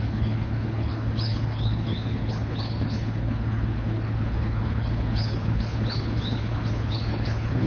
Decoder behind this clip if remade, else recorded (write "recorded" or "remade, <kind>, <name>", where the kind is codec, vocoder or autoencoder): remade, codec, HILCodec